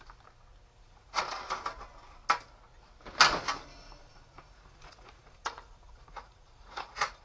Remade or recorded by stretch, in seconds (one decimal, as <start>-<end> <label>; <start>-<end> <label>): 0.0-0.7 recorded; 0.7-1.2 remade; 1.2-4.0 recorded; 4.0-7.2 remade